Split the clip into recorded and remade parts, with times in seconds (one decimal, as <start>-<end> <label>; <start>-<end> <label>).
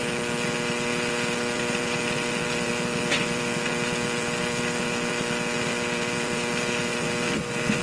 0.0-7.8 recorded